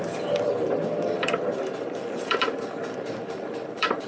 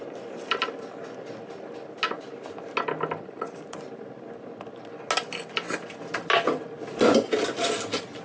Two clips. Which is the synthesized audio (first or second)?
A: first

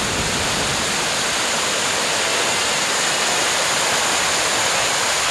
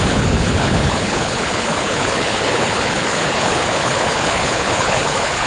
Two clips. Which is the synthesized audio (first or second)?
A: second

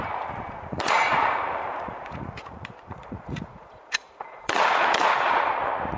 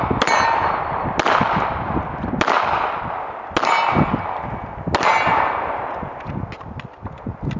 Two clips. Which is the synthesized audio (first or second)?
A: first